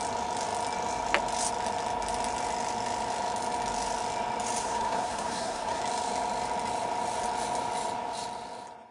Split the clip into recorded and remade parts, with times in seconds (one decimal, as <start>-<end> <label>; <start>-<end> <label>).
0.0-4.6 recorded; 4.6-5.8 remade; 5.8-8.9 recorded